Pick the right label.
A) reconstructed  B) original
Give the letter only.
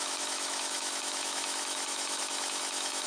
A